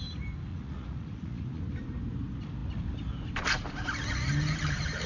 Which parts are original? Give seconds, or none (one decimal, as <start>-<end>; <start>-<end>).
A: 0.0-0.5; 1.6-5.1